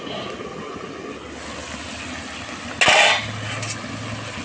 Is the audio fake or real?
real